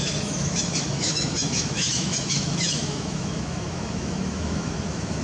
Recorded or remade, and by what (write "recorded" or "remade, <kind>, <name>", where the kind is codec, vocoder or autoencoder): remade, autoencoder, DAC-VAE